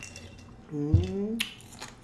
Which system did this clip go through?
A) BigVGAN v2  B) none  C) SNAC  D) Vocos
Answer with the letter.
B